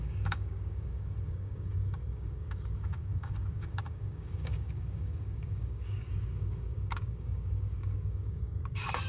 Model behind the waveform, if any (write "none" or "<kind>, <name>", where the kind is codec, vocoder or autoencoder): codec, DAC